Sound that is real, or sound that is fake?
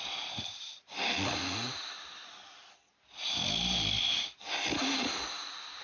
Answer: real